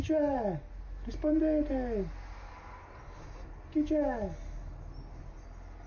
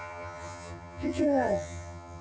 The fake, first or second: second